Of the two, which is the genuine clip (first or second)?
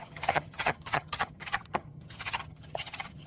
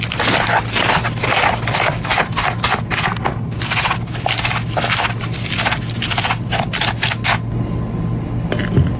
second